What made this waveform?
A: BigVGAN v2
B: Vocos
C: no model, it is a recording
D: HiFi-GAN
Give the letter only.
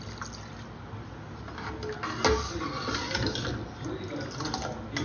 C